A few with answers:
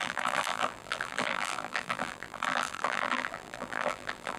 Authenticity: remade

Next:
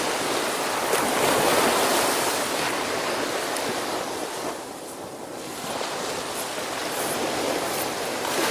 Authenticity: recorded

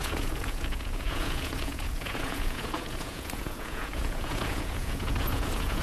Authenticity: remade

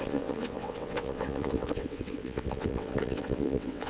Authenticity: remade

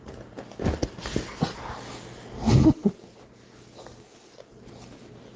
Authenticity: recorded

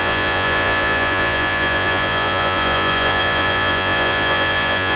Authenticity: remade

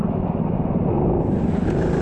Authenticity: recorded